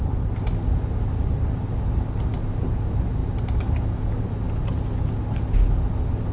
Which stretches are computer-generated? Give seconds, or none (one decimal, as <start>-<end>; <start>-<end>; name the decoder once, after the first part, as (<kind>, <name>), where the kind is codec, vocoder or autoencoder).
none